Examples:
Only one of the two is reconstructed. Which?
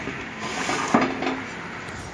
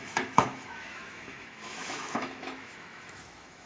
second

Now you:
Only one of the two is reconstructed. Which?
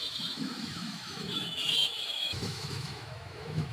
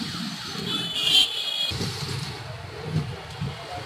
first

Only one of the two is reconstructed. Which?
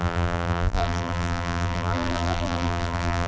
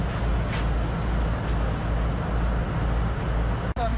first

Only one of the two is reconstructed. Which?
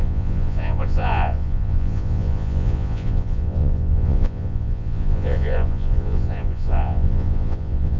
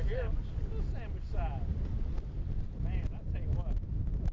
first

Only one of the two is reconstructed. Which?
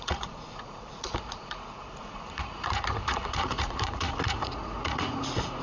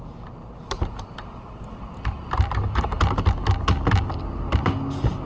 first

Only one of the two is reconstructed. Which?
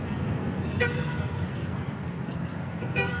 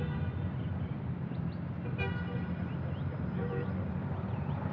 first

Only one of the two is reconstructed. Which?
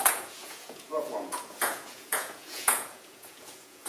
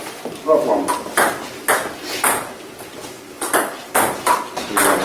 first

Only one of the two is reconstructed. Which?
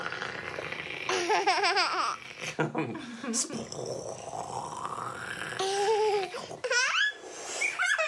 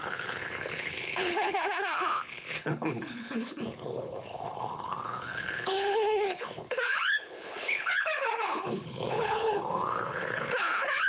second